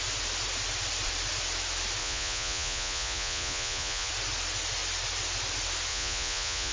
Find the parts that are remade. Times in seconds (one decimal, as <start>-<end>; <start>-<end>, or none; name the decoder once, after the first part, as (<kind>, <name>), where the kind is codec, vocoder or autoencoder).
2.0-4.1 (vocoder, Vocos); 5.9-6.7